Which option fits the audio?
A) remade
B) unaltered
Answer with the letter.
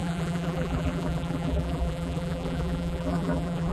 A